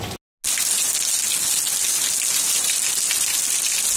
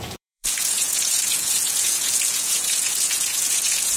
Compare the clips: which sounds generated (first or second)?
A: second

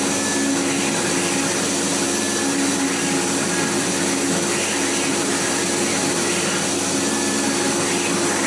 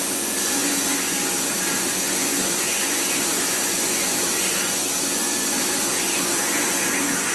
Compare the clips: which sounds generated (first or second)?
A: second